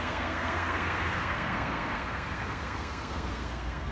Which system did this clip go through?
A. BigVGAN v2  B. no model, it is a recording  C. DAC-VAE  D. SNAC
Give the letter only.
D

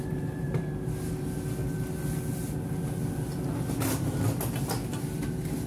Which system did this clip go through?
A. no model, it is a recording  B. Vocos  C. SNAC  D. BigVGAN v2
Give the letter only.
A